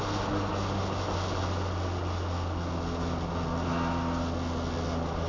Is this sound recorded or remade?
recorded